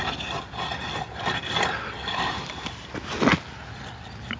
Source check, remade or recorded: recorded